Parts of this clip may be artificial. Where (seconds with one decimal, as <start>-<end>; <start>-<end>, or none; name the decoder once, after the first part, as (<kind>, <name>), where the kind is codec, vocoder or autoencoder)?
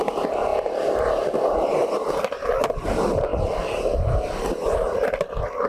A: none